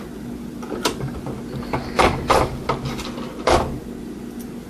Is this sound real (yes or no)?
yes